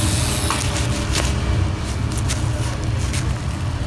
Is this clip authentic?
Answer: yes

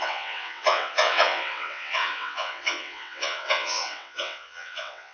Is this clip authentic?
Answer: no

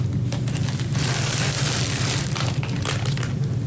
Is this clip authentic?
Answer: yes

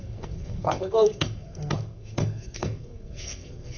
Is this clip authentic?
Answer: no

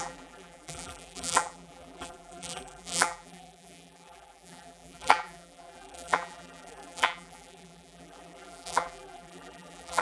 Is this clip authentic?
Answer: no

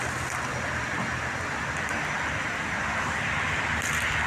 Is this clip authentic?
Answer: yes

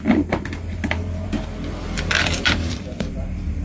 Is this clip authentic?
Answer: no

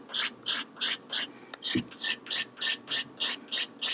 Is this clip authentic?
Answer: yes